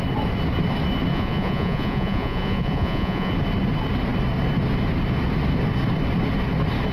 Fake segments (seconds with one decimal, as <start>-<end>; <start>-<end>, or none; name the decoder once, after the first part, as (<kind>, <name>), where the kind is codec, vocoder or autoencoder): 1.1-3.3 (vocoder, Vocos)